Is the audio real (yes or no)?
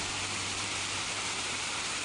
no